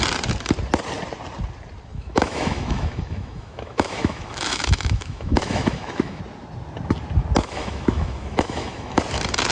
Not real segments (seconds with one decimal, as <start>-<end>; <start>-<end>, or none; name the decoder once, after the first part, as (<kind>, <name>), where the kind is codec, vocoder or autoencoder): 1.9-6.2 (autoencoder, DAC-VAE); 7.4-9.0